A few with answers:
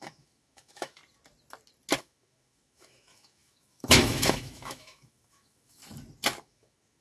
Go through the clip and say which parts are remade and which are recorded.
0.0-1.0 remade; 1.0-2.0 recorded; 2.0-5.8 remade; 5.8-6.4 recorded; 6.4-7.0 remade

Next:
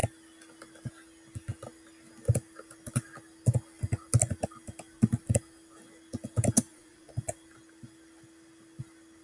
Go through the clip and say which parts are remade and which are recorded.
0.0-6.7 recorded; 6.7-7.3 remade; 7.3-9.2 recorded

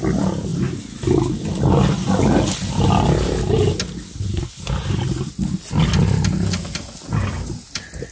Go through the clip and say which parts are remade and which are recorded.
0.0-8.1 recorded

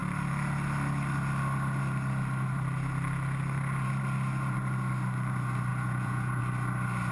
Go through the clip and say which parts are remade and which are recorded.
0.0-5.7 recorded; 5.7-6.4 remade; 6.4-7.1 recorded

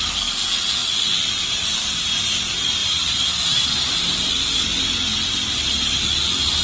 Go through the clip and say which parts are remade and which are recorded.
0.0-2.8 recorded; 2.8-4.3 remade; 4.3-6.6 recorded